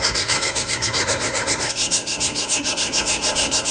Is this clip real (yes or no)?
no